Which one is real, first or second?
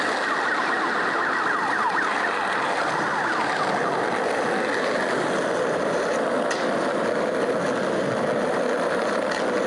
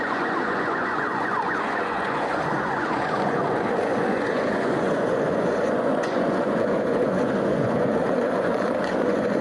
first